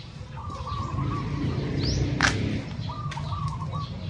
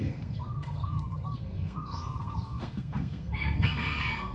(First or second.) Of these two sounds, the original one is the first